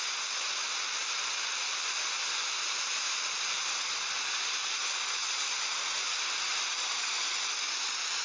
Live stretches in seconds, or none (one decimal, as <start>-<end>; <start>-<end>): 0.0-6.5; 7.5-8.2